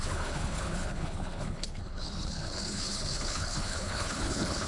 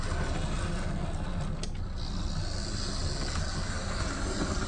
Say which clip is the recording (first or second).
second